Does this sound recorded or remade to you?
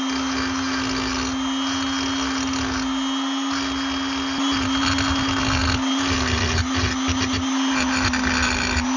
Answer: recorded